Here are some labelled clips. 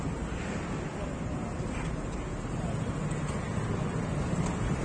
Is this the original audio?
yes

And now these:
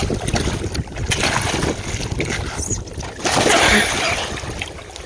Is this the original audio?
yes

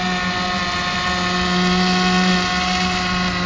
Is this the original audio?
yes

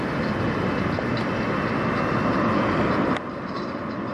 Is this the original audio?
yes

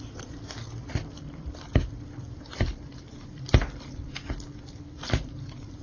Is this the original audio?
no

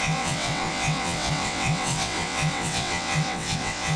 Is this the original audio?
no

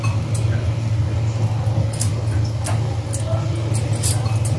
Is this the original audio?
yes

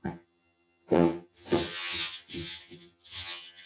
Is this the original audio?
no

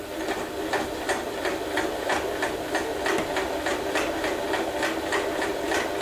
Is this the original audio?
yes